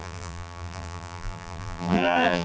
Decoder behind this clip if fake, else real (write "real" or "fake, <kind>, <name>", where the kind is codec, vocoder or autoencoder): fake, vocoder, BigVGAN v2